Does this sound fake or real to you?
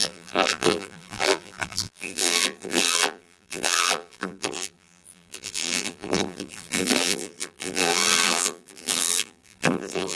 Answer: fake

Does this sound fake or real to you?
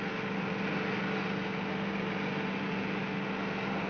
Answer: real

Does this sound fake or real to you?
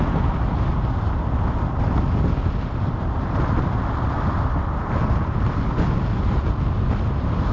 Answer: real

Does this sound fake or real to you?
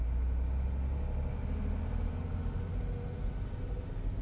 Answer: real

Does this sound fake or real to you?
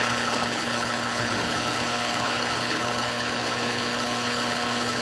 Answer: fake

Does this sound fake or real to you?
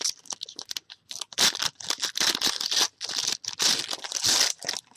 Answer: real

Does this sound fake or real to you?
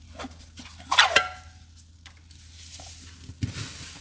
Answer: real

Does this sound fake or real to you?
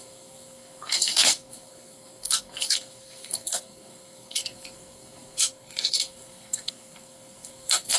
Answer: fake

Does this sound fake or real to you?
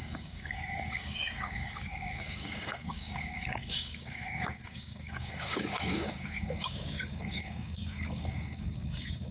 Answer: fake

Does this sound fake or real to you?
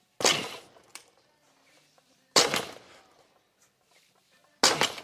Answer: real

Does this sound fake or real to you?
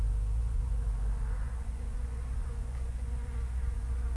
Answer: fake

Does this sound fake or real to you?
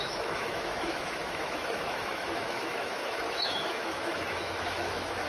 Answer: fake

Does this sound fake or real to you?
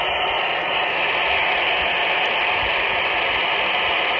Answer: real